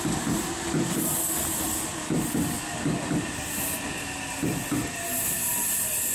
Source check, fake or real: real